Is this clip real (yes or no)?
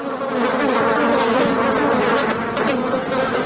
yes